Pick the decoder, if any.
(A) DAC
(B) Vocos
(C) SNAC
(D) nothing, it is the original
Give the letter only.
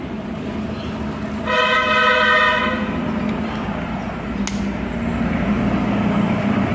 D